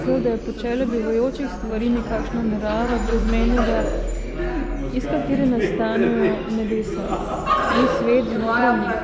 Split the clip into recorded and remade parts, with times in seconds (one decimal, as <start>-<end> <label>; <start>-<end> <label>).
0.0-9.0 recorded